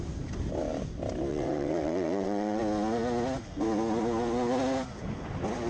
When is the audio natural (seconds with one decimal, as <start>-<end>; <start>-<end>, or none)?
0.0-1.3; 2.6-5.7